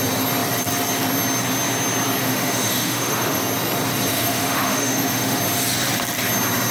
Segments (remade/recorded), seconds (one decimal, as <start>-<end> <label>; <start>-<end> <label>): 0.0-2.2 recorded; 2.2-3.4 remade; 3.4-4.1 recorded; 4.1-5.4 remade; 5.4-6.7 recorded